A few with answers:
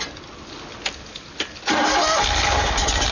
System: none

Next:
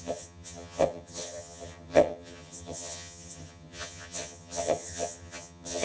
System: vocoder, HiFi-GAN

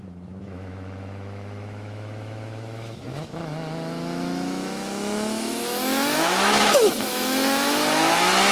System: autoencoder, DAC-VAE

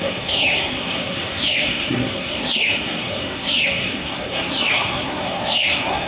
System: codec, SNAC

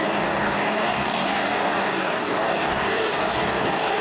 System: codec, DAC